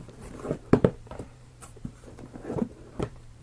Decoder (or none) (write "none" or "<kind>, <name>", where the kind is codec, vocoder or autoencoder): vocoder, BigVGAN v2